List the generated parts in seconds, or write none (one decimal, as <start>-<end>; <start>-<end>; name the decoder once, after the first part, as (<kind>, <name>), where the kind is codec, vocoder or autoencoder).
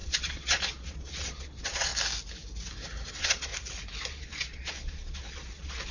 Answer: 0.0-1.9 (vocoder, Vocos); 3.1-3.5; 4.1-5.9